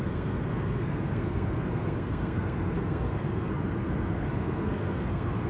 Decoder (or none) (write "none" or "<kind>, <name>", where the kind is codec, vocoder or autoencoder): codec, SNAC